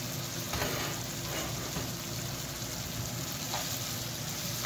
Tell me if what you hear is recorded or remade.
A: recorded